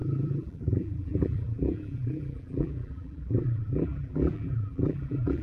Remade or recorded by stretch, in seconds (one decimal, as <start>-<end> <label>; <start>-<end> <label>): 0.0-5.4 remade